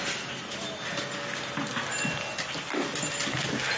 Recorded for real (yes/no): yes